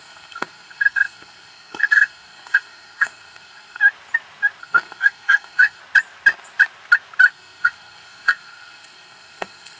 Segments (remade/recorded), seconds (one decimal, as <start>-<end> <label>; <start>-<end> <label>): 0.0-3.8 remade; 3.8-4.6 recorded; 4.6-5.8 remade; 5.8-7.3 recorded; 7.3-9.8 remade